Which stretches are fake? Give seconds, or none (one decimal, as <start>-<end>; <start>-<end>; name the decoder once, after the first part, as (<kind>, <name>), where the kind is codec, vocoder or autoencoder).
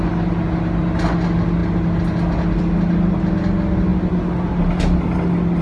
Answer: none